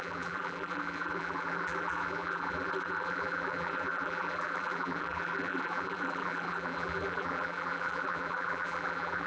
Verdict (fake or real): fake